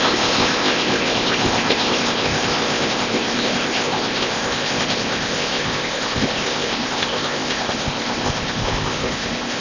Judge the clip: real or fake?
fake